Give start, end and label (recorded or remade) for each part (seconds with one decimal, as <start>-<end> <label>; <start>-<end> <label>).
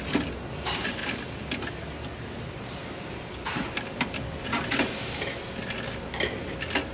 0.0-6.9 recorded